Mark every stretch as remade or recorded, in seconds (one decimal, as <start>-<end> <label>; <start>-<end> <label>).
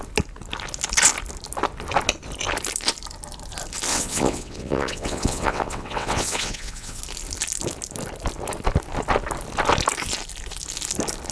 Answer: 0.0-3.9 recorded; 3.9-7.0 remade; 7.0-11.3 recorded